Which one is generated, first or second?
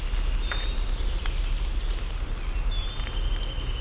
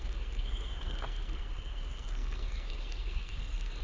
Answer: second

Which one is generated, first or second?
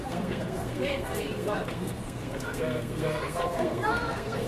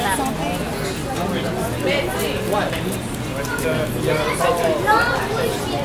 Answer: first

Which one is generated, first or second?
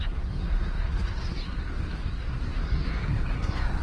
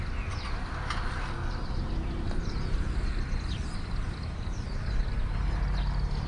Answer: first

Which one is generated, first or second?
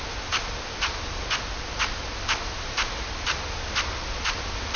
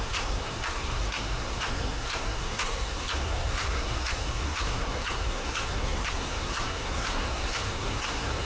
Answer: second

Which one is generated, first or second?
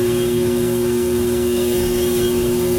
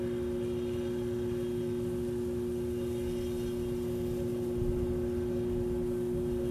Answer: first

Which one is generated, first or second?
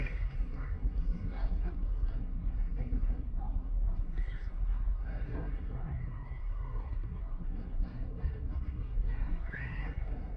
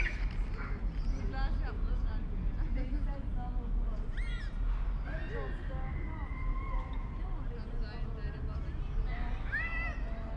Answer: first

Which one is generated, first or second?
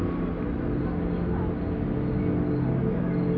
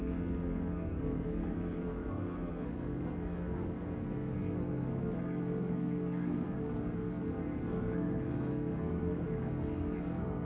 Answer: second